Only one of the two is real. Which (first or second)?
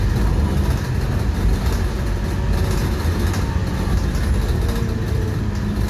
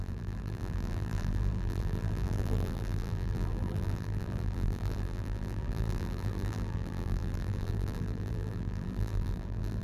first